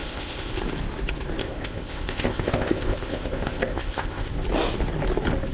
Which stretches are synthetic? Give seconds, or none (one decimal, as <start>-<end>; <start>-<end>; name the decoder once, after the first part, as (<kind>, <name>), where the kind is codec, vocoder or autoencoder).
0.0-0.6 (codec, ZipCodec); 1.4-4.3